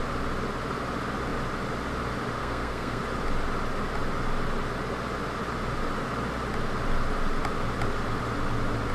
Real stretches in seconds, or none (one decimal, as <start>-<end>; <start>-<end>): 0.0-2.4; 3.0-8.9